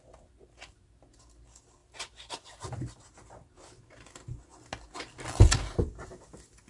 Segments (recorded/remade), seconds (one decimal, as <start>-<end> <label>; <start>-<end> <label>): 0.0-6.7 recorded